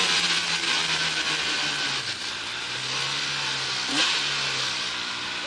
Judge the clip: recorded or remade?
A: recorded